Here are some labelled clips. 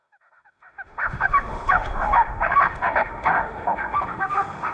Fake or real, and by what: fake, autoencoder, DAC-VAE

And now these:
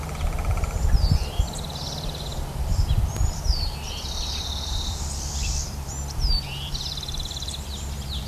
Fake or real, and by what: fake, vocoder, BigVGAN v2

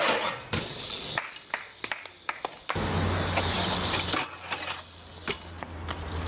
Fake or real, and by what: real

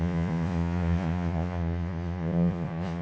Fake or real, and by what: fake, vocoder, Vocos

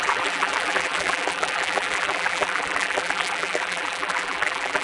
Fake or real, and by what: fake, vocoder, BigVGAN v2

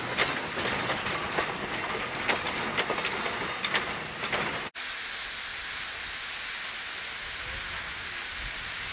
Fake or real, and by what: real